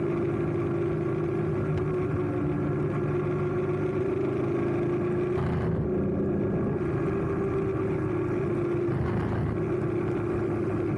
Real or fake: real